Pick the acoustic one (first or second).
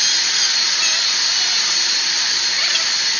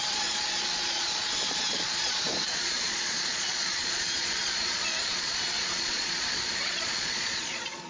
first